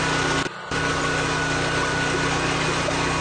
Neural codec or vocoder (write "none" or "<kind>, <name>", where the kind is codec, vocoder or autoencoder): none